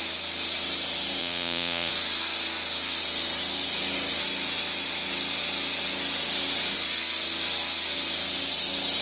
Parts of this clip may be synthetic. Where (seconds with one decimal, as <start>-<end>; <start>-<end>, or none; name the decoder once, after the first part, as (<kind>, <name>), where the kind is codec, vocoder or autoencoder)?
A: 1.2-1.9 (vocoder, Vocos)